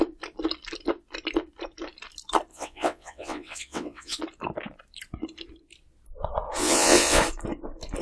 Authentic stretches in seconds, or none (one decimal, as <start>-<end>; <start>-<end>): 0.0-2.5; 4.2-6.6; 7.2-8.0